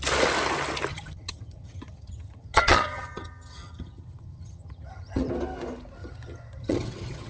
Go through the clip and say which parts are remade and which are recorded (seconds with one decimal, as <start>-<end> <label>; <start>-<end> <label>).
0.0-0.9 recorded; 0.9-5.3 remade; 5.3-6.0 recorded; 6.0-7.3 remade